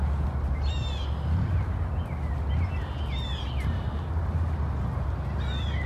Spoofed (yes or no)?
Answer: no